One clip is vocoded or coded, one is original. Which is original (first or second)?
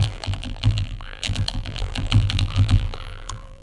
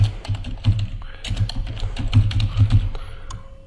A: second